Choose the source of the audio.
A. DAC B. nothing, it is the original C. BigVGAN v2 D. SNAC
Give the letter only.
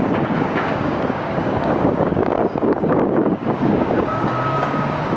A